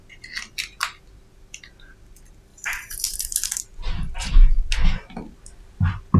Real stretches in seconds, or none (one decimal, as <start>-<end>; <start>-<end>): 0.0-2.5; 3.6-6.2